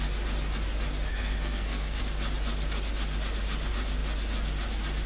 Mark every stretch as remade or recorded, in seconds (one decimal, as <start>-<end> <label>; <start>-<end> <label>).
0.0-1.1 recorded; 1.1-2.0 remade; 2.0-5.1 recorded